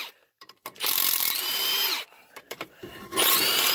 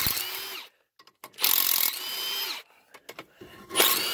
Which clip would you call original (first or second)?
second